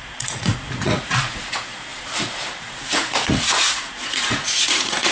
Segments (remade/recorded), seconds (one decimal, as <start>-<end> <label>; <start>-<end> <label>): 0.0-5.1 remade